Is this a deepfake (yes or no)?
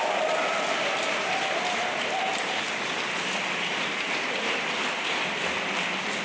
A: no